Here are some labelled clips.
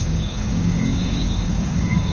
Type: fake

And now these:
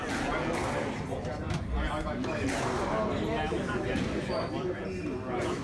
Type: real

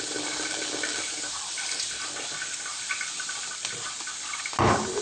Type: real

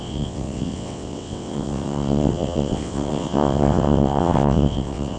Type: fake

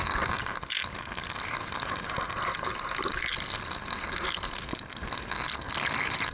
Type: real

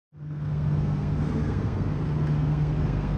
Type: fake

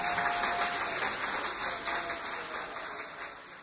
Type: real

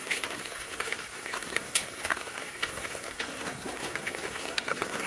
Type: fake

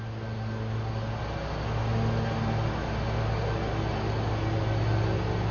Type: real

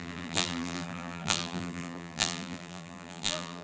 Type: fake